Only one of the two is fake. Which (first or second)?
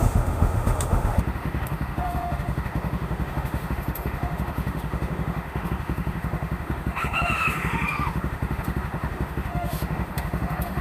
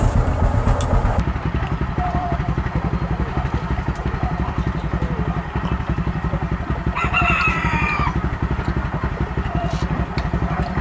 first